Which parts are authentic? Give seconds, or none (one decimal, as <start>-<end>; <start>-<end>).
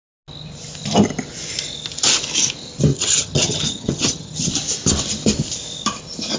0.0-2.9; 4.5-6.4